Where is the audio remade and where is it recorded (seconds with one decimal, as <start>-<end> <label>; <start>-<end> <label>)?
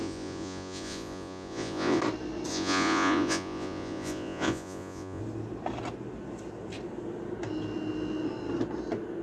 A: 0.0-2.0 remade; 2.0-2.5 recorded; 2.5-5.2 remade; 5.2-9.2 recorded